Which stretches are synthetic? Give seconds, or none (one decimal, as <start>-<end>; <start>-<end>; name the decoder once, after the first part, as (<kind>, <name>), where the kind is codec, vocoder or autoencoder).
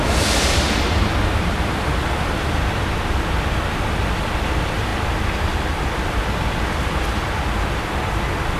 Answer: none